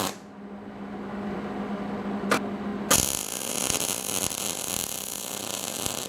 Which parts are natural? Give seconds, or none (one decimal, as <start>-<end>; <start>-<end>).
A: 0.0-6.1